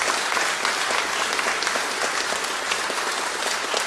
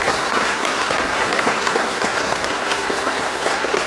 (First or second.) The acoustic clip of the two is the first